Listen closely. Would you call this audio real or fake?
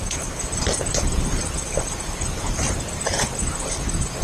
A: fake